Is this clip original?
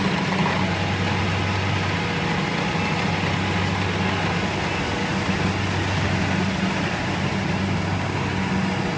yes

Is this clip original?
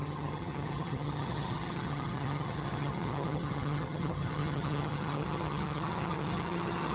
no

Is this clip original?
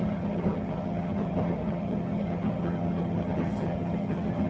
no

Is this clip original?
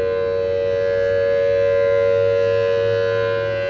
yes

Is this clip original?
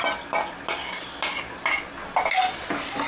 yes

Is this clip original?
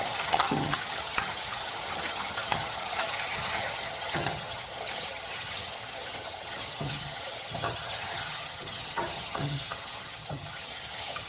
no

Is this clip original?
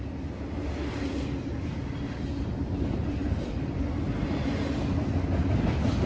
yes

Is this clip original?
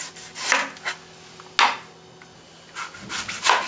yes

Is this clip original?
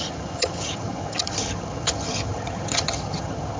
no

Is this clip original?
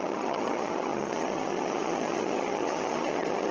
no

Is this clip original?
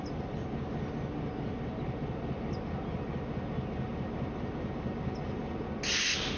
yes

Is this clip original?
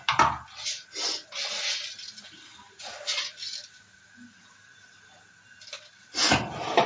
yes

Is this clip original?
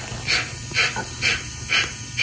yes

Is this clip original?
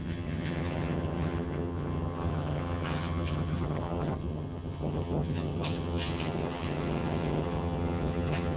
no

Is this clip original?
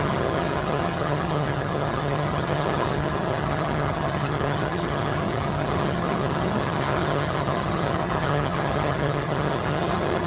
no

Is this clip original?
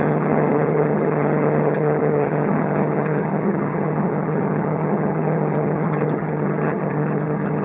no